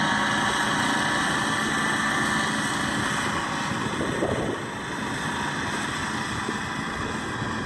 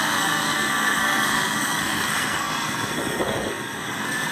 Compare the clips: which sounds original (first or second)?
first